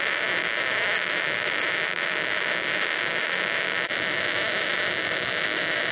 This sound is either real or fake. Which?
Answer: real